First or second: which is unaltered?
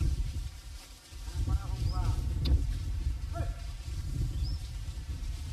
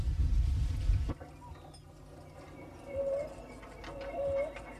second